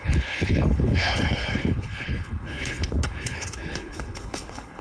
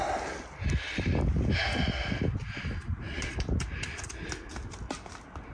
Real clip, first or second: second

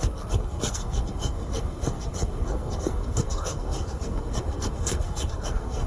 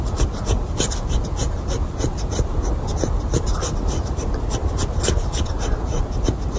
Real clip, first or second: second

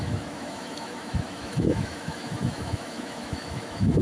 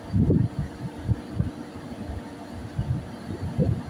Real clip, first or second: second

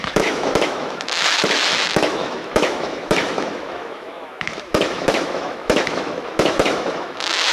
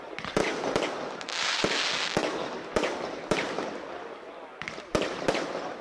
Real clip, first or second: second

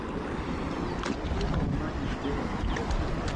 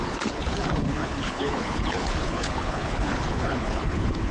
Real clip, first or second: first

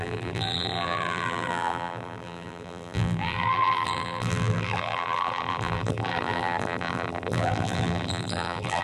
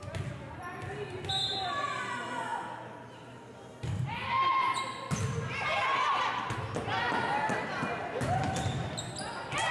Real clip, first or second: second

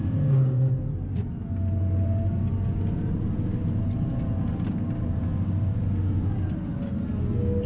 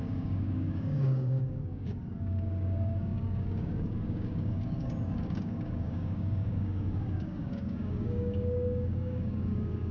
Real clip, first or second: first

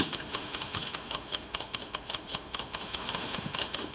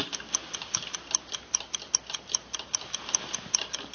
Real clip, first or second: second